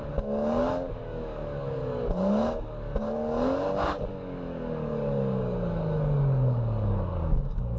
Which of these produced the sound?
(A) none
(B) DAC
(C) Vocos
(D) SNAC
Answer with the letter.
B